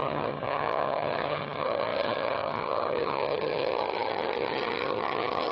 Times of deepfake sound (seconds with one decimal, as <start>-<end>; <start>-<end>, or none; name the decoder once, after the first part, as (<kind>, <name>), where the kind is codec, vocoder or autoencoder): 0.0-5.5 (vocoder, HiFi-GAN)